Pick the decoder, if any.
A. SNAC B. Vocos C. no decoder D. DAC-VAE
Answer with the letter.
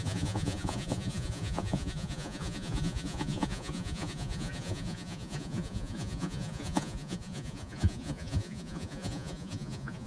B